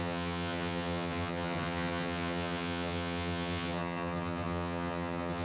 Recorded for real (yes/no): no